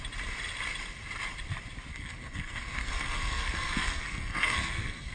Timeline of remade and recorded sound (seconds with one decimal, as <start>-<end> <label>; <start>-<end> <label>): 0.0-1.9 recorded; 1.9-5.1 remade